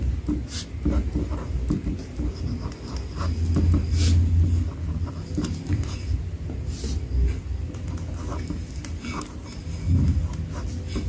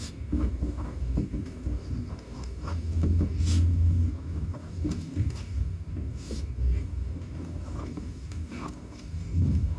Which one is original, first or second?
first